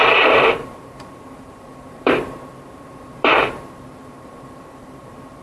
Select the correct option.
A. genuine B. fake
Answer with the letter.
B